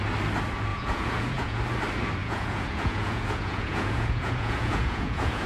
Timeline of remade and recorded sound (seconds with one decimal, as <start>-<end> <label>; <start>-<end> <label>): 0.0-0.7 recorded; 0.7-1.6 remade; 1.6-2.2 recorded; 2.2-5.5 remade